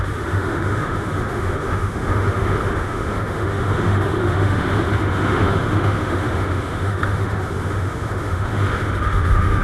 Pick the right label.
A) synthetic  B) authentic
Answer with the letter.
A